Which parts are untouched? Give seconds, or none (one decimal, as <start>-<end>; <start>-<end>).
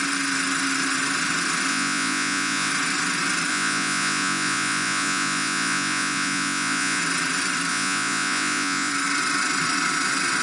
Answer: 0.0-1.7; 2.7-3.5; 7.0-7.7; 8.9-10.4